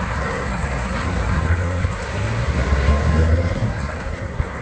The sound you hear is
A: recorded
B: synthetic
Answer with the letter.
B